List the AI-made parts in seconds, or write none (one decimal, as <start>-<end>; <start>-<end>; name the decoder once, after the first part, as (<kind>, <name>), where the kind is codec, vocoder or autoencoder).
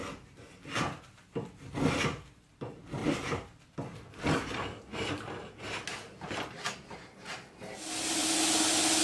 none